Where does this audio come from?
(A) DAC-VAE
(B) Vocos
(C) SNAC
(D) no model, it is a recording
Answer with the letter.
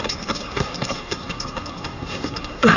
C